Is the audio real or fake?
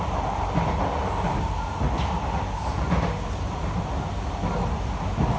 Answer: real